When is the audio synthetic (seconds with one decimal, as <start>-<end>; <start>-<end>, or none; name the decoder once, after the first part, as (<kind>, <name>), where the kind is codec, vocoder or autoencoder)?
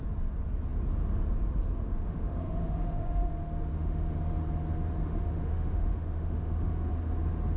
1.8-3.3 (autoencoder, DAC-VAE); 3.7-4.2; 5.0-6.9